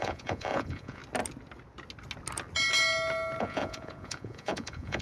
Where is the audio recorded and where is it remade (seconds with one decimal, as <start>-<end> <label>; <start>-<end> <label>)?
0.0-1.0 remade; 1.0-3.4 recorded; 3.4-5.0 remade